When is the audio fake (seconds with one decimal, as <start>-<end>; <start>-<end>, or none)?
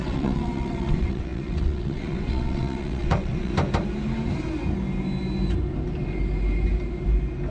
0.0-3.5